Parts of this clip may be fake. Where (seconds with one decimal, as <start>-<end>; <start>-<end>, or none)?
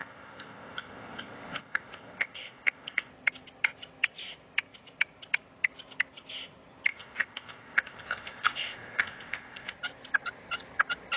0.0-3.1; 6.9-9.7